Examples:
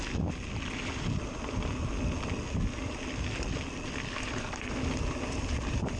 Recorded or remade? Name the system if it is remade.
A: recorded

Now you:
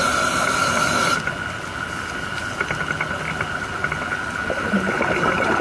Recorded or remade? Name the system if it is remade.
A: recorded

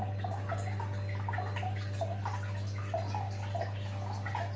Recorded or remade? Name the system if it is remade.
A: recorded